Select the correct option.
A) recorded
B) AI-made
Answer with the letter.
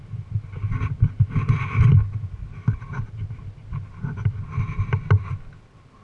A